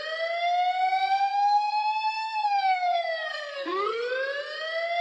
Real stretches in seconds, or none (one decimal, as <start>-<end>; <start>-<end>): 0.0-1.1; 4.1-5.0